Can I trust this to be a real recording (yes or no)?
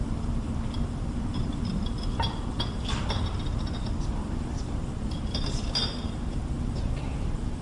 yes